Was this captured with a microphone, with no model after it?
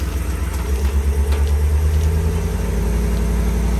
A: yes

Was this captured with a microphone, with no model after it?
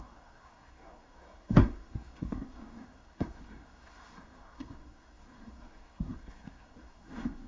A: no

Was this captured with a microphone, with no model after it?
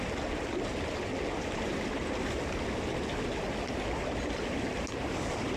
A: yes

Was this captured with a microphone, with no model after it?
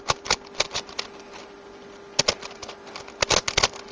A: yes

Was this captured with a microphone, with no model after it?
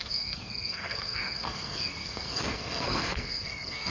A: no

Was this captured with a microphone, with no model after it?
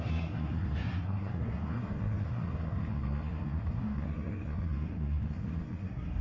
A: no